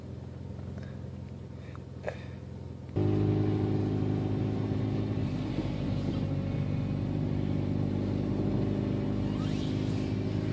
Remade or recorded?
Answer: recorded